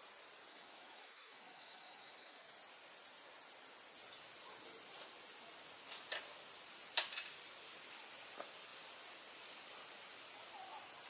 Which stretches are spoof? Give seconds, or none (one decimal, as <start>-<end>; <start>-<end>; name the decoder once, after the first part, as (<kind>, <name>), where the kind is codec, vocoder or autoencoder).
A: 0.5-2.5 (autoencoder, DAC-VAE)